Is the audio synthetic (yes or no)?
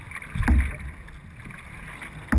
no